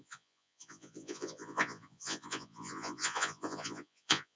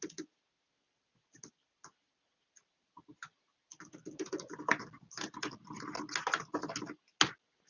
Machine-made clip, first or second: first